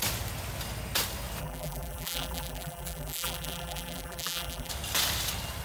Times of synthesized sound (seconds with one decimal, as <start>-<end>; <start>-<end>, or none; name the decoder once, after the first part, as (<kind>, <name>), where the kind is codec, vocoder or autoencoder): 1.4-4.7 (vocoder, BigVGAN v2)